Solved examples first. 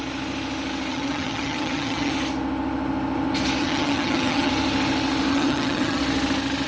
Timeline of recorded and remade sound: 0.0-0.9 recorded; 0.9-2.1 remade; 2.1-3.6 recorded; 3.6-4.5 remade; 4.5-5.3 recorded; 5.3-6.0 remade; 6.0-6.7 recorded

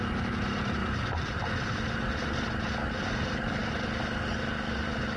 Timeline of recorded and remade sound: 0.0-0.8 recorded; 0.8-1.8 remade; 1.8-5.2 recorded

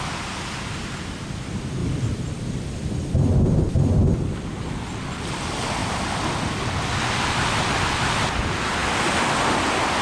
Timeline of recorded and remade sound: 0.0-1.8 recorded; 1.8-3.6 remade; 3.6-10.0 recorded

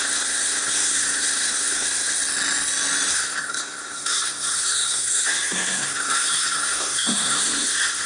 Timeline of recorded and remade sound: 0.0-2.2 remade; 2.2-3.1 recorded; 3.1-8.1 remade

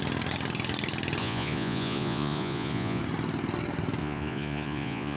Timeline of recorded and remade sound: 0.0-1.2 recorded; 1.2-3.0 remade; 3.0-4.0 recorded; 4.0-5.2 remade